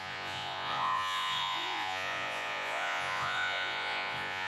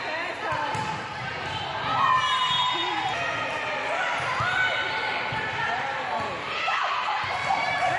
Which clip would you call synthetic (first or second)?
first